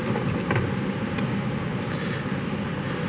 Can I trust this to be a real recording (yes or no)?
yes